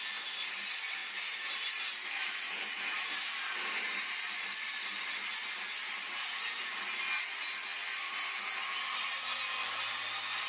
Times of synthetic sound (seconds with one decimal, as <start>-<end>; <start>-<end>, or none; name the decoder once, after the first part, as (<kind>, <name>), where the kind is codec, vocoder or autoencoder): 1.0-5.1 (vocoder, BigVGAN v2)